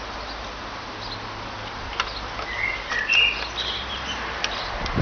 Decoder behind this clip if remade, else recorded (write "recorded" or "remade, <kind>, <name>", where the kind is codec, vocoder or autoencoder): recorded